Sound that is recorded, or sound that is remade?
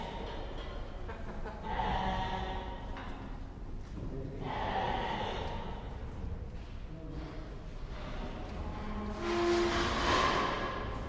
recorded